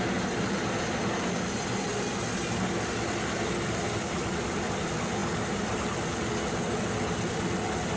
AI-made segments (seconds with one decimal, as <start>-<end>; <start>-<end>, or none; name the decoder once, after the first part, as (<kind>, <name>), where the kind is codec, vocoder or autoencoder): none